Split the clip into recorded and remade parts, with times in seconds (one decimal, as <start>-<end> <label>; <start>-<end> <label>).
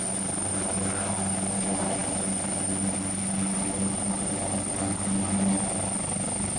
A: 0.0-6.6 recorded